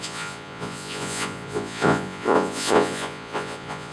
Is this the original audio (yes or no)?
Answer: no